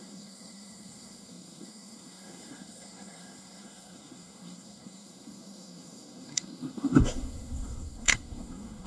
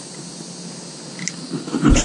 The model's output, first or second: first